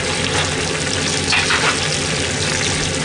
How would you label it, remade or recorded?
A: recorded